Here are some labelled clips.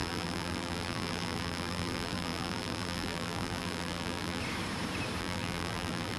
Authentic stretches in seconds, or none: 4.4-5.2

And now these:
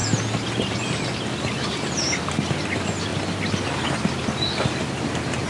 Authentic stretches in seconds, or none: 0.0-5.5

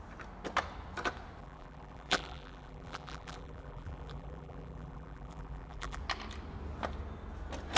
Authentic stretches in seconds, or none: 0.0-1.4; 6.0-7.8

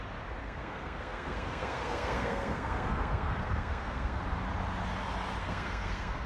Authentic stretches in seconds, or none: 0.0-0.4; 4.2-5.4